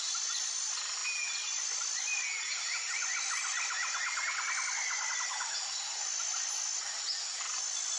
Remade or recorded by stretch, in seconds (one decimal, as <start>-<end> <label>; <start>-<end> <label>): 0.0-8.0 recorded